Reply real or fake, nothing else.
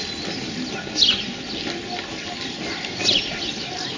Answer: real